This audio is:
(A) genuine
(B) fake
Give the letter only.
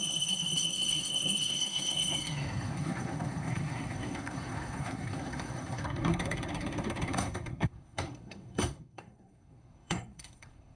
B